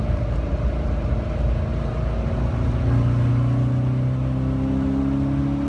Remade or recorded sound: recorded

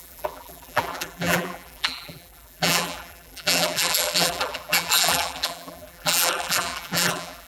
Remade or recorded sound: remade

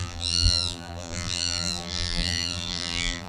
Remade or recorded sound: remade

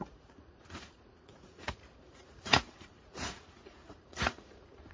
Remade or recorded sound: remade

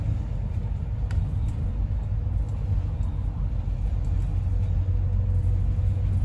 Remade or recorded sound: recorded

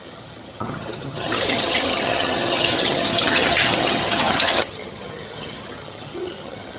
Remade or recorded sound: remade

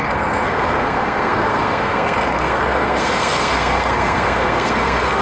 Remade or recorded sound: remade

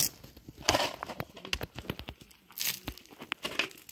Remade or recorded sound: recorded